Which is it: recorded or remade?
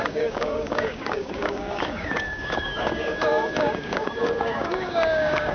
remade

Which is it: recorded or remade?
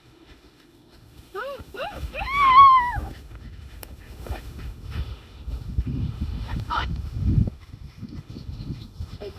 remade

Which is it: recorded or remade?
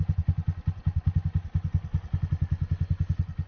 recorded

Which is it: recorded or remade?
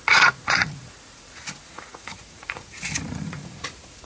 remade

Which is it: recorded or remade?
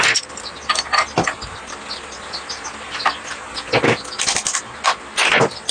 recorded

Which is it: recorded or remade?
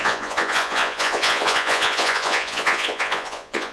remade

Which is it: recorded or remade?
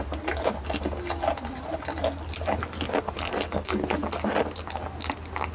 recorded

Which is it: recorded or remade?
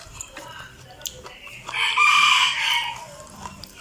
recorded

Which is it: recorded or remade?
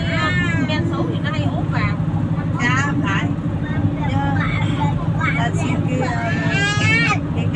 recorded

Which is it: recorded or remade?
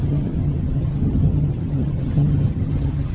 remade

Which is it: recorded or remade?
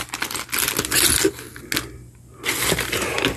recorded